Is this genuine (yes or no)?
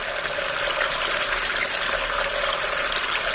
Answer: yes